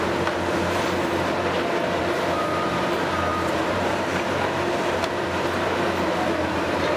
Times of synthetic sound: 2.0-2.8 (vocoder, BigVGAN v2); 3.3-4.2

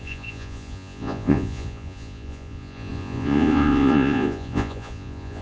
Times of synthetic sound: 0.0-5.4 (vocoder, Vocos)

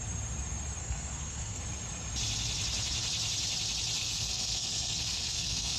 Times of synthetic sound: 0.8-1.6 (codec, SNAC); 4.0-5.8

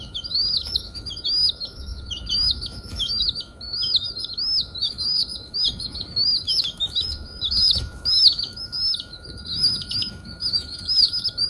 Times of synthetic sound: 0.0-11.5 (autoencoder, DAC-VAE)

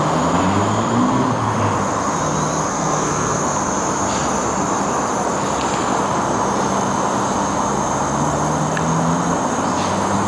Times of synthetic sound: 2.7-3.4 (codec, SNAC)

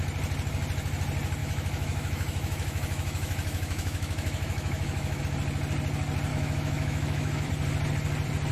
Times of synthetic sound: 1.4-5.2 (autoencoder, DAC-VAE); 6.3-7.5

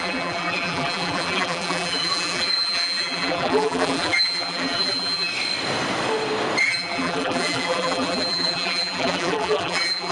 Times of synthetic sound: 0.0-5.3 (vocoder, BigVGAN v2); 6.6-10.1